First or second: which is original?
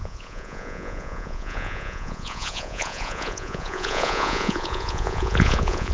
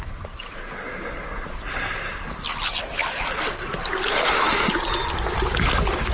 second